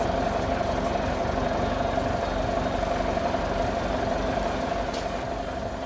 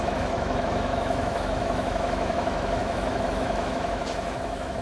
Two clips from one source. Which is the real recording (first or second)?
first